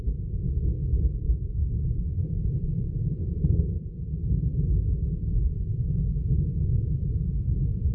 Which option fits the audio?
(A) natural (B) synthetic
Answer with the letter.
B